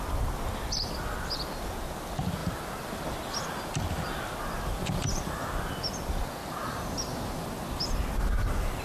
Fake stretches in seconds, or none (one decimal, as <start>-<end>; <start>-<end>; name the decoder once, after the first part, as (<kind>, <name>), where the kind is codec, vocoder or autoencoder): 2.4-5.7 (vocoder, BigVGAN v2); 6.4-7.8